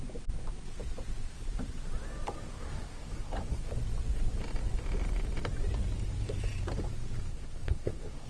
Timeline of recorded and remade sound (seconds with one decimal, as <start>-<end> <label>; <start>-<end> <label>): 0.0-2.5 recorded; 2.5-3.7 remade; 3.7-7.3 recorded; 7.3-8.3 remade